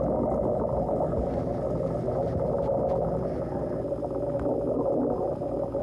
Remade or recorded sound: recorded